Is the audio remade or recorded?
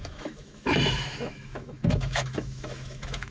remade